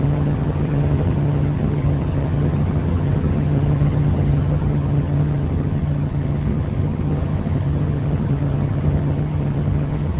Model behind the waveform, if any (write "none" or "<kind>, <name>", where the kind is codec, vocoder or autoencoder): vocoder, HiFi-GAN